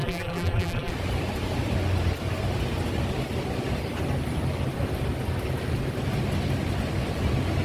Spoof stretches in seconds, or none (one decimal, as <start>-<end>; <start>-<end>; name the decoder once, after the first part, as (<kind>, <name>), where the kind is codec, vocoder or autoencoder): 0.0-0.9 (vocoder, BigVGAN v2)